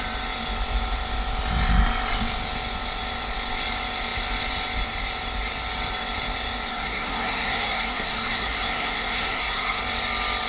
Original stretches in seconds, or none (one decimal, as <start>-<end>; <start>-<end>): 0.0-6.7; 9.8-10.5